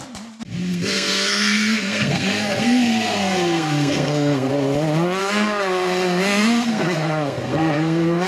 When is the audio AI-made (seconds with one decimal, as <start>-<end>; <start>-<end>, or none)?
0.7-4.5; 5.2-8.3